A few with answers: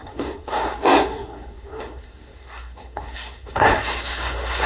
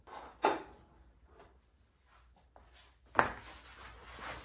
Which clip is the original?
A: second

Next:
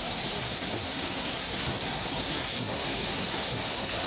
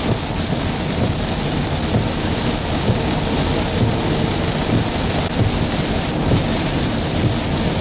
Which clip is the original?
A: second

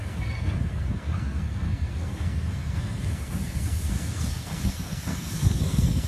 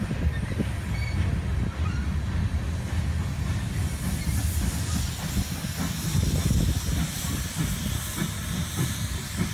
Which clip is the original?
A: second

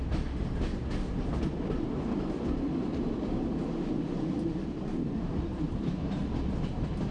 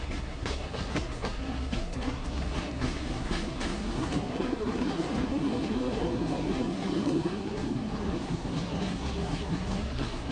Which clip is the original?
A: first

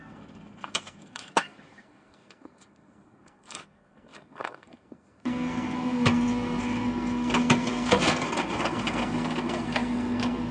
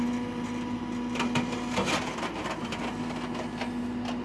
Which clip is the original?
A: second